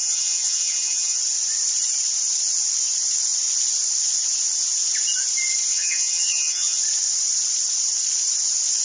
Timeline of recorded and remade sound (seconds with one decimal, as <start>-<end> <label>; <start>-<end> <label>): 0.0-1.2 remade; 1.2-5.7 recorded; 5.7-6.8 remade; 6.8-8.8 recorded